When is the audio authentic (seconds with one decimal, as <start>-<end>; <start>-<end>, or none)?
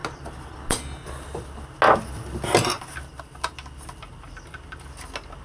0.0-5.4